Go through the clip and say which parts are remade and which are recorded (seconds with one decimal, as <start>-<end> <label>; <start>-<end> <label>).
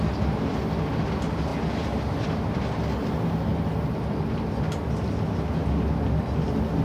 0.0-6.8 recorded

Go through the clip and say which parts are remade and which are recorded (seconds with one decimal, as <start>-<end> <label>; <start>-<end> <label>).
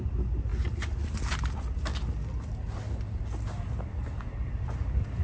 0.0-5.2 recorded